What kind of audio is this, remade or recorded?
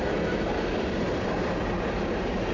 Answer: recorded